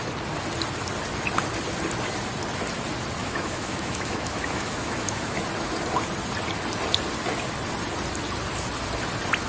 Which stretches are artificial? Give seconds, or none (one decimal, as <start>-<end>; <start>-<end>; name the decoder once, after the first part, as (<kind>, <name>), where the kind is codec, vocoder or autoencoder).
3.2-5.4 (autoencoder, DAC-VAE)